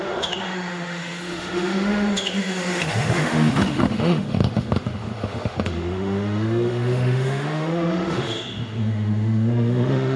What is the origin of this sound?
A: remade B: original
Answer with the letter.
A